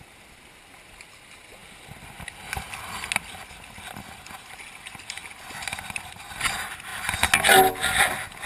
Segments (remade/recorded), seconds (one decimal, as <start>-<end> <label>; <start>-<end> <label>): 0.0-8.5 recorded